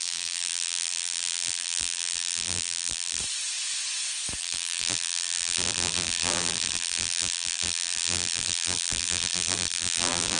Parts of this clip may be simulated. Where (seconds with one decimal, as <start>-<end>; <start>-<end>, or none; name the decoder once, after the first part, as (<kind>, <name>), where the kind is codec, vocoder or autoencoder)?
0.0-3.2 (vocoder, BigVGAN v2); 4.4-10.4